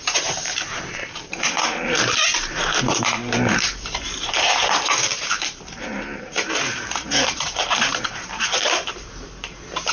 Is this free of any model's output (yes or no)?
no